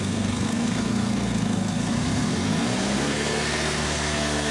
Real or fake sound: fake